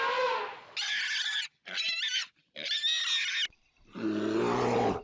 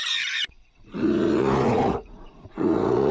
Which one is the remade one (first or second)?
second